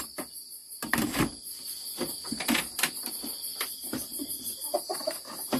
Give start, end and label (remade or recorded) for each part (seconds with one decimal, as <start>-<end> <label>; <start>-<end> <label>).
0.0-5.6 recorded